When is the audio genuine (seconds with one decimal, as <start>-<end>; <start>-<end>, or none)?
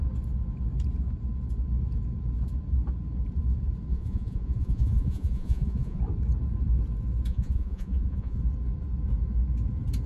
0.0-3.9; 6.0-7.3; 8.4-10.1